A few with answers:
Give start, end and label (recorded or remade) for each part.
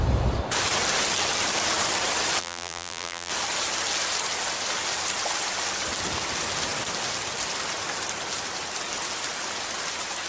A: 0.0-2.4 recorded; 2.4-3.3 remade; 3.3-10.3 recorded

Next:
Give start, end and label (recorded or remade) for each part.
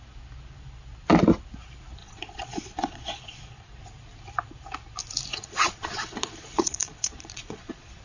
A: 0.0-2.0 recorded; 2.0-3.8 remade; 3.8-5.3 recorded; 5.3-8.0 remade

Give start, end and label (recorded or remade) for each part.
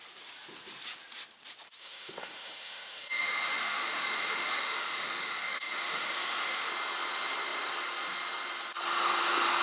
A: 0.0-1.8 recorded; 1.8-6.7 remade; 6.7-9.6 recorded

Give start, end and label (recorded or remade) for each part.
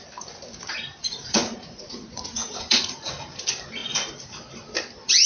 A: 0.0-1.0 recorded; 1.0-3.1 remade; 3.1-5.3 recorded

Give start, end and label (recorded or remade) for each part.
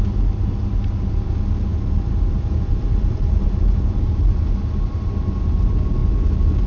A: 0.0-1.7 recorded; 1.7-4.0 remade; 4.0-6.7 recorded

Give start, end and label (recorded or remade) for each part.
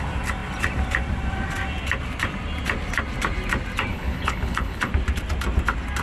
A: 0.0-3.9 recorded; 3.9-4.9 remade; 4.9-6.0 recorded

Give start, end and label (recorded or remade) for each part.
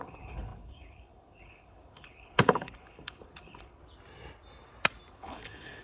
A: 0.0-3.8 remade; 3.8-5.1 recorded; 5.1-5.8 remade